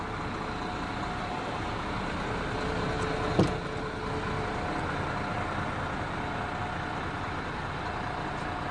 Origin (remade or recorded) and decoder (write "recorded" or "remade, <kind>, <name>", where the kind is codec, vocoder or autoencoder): recorded